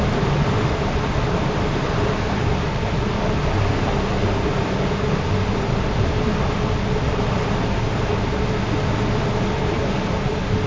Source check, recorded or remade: recorded